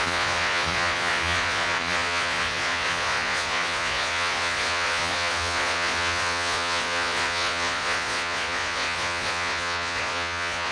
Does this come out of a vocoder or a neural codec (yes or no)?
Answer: yes